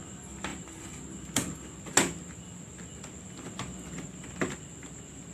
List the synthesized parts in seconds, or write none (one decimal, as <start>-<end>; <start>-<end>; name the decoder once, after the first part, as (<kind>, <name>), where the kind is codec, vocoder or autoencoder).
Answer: 0.5-1.0 (vocoder, BigVGAN v2)